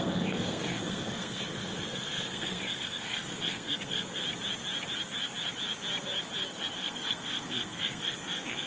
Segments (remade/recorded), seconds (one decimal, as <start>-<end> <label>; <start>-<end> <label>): 0.0-4.2 remade; 4.2-6.8 recorded; 6.8-8.7 remade